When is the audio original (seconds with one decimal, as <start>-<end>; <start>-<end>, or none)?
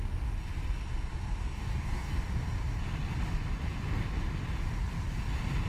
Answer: 0.0-1.4; 2.1-5.7